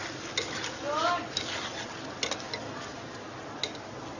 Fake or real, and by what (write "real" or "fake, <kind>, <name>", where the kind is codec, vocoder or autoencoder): real